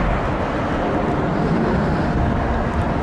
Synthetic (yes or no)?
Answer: no